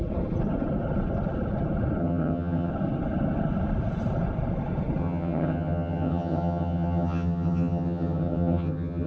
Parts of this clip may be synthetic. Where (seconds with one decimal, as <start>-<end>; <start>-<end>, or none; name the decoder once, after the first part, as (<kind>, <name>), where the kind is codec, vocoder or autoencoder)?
2.0-2.7 (vocoder, HiFi-GAN); 5.0-9.1